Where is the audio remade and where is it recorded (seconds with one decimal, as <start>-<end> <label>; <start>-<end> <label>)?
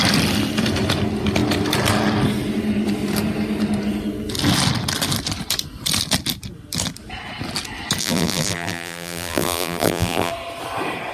0.0-8.0 recorded; 8.0-10.3 remade; 10.3-11.1 recorded